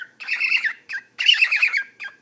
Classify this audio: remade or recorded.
remade